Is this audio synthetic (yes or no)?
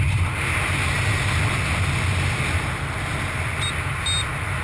no